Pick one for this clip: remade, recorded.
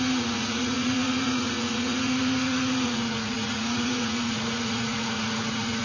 remade